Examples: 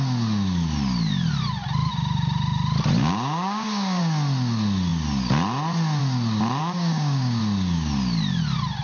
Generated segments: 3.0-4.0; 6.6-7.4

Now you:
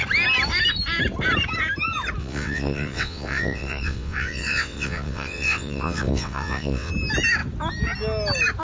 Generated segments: 2.2-6.9

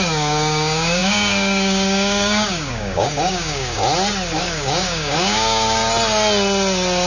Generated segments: 0.0-3.8; 4.4-5.8

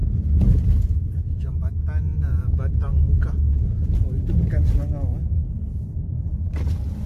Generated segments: none

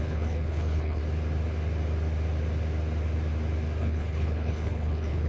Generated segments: 0.0-1.0; 3.8-5.3

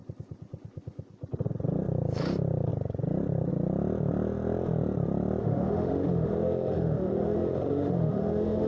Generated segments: 5.4-8.7

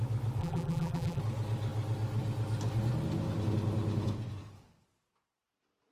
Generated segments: 0.4-1.2

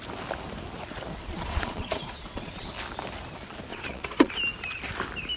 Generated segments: 1.2-2.7; 3.7-4.3